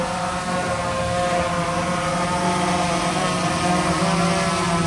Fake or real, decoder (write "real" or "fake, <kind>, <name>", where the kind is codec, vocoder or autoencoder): real